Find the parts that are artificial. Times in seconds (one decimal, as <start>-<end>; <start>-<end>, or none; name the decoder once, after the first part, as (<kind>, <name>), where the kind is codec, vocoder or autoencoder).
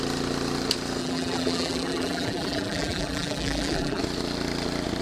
1.0-4.0 (vocoder, BigVGAN v2)